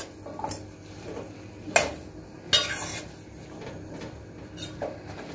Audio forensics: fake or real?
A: real